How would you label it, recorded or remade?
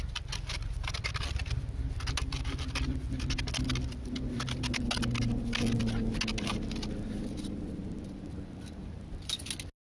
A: recorded